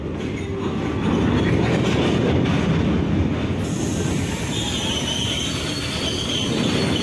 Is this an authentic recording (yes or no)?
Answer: yes